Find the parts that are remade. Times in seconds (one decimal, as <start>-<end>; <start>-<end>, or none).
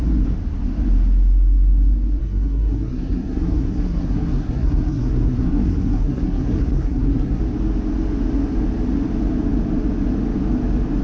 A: 2.2-7.4